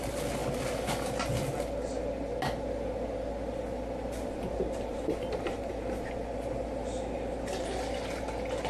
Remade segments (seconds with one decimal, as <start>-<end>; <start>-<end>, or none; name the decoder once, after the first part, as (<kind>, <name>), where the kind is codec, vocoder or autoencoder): 4.9-5.7 (vocoder, BigVGAN v2)